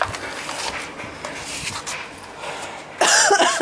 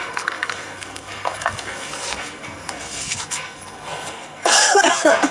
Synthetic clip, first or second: second